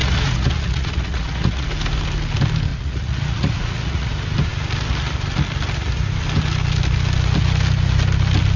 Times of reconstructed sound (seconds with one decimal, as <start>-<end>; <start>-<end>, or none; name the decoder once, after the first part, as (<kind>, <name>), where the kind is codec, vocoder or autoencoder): 0.0-1.7 (vocoder, Vocos); 2.7-4.1